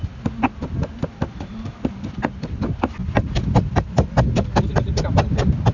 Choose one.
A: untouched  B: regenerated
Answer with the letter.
A